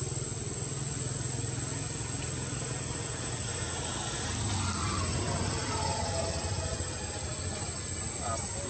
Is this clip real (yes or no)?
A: yes